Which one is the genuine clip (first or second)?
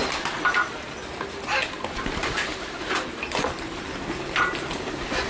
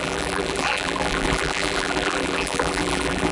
first